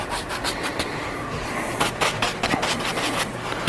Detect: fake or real real